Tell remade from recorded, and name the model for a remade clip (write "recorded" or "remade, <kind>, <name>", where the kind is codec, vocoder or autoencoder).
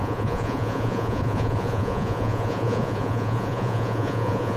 remade, vocoder, Vocos